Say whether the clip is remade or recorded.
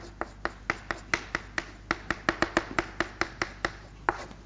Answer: recorded